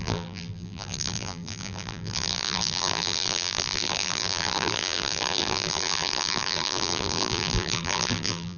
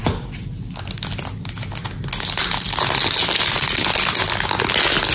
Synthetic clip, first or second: first